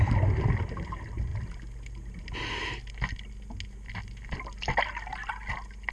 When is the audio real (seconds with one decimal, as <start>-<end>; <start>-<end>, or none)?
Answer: 0.0-5.9